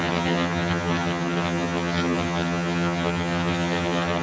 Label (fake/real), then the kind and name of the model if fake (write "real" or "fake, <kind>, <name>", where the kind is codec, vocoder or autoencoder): fake, vocoder, HiFi-GAN